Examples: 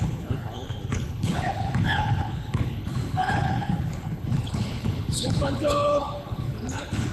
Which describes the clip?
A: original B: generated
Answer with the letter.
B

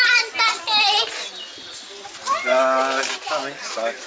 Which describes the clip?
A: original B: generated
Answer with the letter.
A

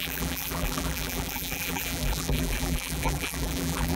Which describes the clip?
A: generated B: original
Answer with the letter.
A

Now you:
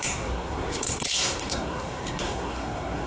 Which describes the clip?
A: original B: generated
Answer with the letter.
B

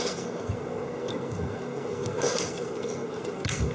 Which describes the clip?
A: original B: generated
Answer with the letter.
B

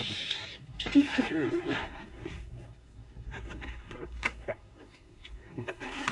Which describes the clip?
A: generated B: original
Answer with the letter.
A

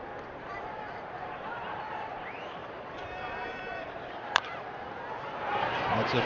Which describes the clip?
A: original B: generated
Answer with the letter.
B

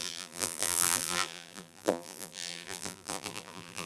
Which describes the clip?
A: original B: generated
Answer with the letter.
B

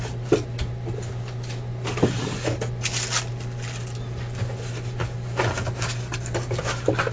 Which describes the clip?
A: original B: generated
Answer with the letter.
A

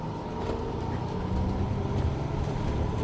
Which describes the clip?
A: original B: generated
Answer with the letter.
A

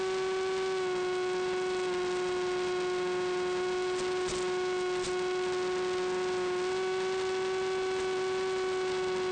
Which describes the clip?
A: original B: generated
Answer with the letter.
A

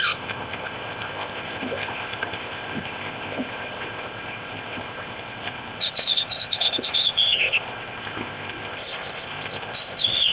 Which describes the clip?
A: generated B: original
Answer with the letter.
A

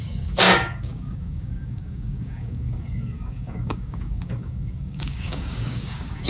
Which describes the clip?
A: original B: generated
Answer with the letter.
B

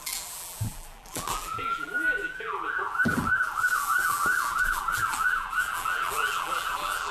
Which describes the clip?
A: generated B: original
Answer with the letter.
A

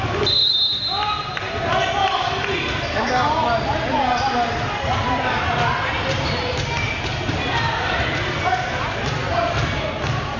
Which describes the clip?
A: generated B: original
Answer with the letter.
B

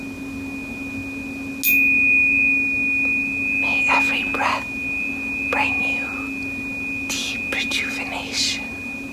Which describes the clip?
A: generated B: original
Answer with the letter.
B